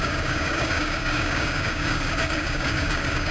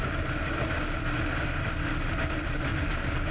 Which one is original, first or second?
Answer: second